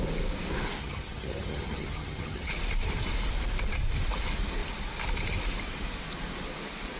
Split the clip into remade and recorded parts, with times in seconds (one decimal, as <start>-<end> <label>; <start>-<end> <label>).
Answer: 0.0-0.8 recorded; 0.8-2.5 remade; 2.5-7.0 recorded